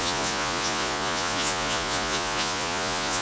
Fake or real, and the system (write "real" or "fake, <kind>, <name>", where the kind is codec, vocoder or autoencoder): fake, vocoder, Vocos